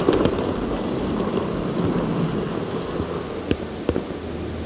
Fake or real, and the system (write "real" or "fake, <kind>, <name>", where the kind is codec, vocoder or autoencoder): real